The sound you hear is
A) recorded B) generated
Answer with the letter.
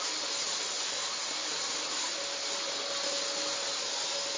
A